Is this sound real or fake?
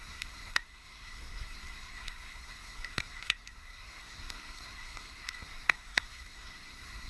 fake